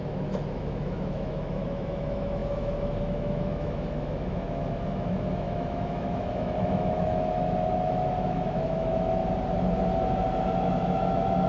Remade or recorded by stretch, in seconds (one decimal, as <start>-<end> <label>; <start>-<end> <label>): 0.0-9.2 remade; 9.2-10.7 recorded; 10.7-11.5 remade